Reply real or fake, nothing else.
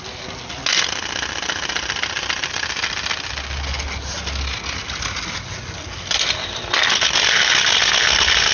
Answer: real